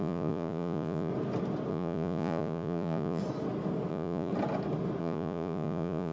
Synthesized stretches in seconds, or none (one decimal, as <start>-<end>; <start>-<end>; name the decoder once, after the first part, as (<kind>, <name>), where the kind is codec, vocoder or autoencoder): 0.0-1.1 (vocoder, Vocos); 1.7-3.2; 3.9-4.3; 5.0-6.1